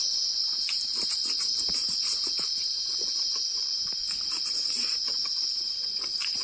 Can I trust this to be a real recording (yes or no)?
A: no